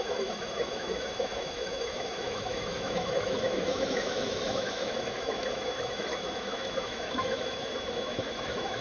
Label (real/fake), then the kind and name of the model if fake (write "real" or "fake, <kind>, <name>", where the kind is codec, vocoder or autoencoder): fake, autoencoder, DAC-VAE